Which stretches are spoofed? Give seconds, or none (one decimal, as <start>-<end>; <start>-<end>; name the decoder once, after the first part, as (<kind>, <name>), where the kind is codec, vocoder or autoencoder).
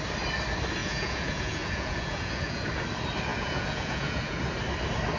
0.8-2.6 (vocoder, Vocos); 3.3-4.4